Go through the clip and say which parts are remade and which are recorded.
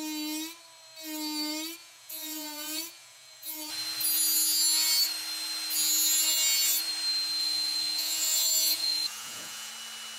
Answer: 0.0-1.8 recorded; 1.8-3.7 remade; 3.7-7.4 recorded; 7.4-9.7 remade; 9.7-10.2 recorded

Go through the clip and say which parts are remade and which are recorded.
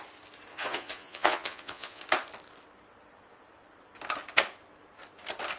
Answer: 0.0-0.5 recorded; 0.5-2.0 remade; 2.0-5.6 recorded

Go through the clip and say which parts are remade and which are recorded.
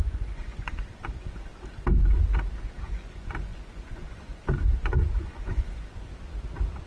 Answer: 0.0-1.5 remade; 1.5-2.5 recorded; 2.5-6.1 remade; 6.1-6.9 recorded